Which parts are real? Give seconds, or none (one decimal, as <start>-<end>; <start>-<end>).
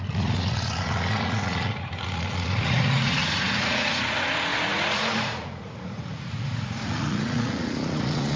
none